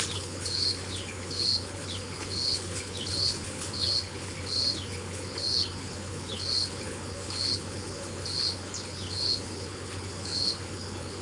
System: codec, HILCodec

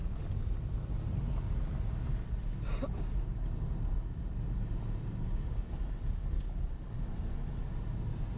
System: none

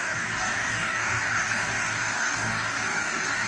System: codec, DAC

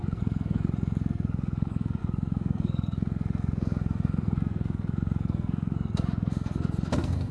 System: codec, SNAC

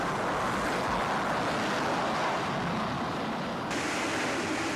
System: none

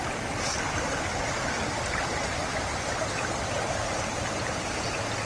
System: none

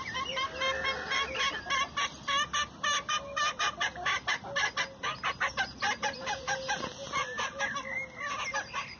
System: none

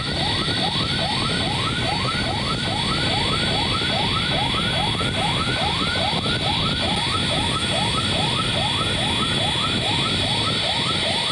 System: none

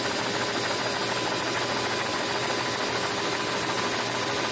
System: none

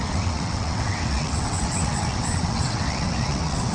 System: vocoder, WaveNeXt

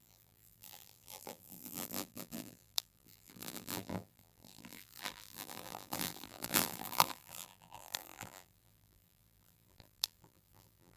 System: vocoder, BigVGAN v2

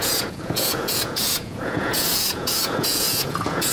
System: vocoder, Vocos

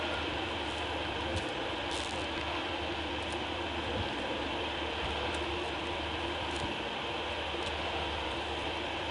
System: none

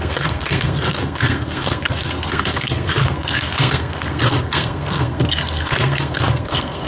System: codec, SNAC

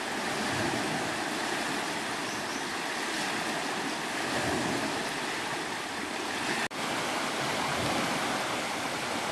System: none